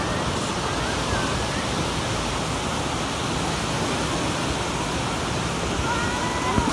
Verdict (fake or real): real